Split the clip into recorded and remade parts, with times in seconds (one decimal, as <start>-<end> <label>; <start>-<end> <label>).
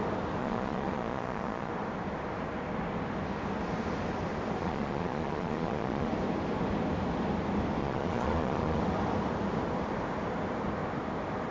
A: 0.0-0.4 recorded; 0.4-1.7 remade; 1.7-4.6 recorded; 4.6-6.1 remade; 6.1-7.8 recorded; 7.8-8.8 remade; 8.8-11.5 recorded